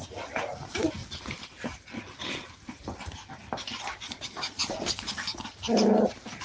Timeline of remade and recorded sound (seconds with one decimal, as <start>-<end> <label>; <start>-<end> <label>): 0.0-6.4 recorded